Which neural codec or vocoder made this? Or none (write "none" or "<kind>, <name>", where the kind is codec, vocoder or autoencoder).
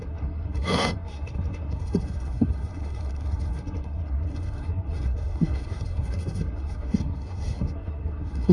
codec, SNAC